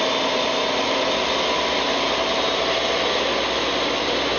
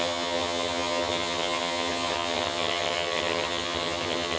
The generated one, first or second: second